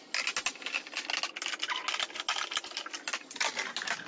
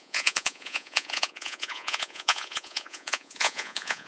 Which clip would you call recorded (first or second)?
first